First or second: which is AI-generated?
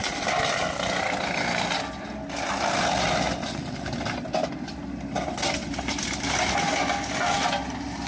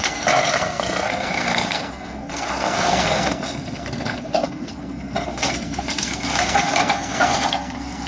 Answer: second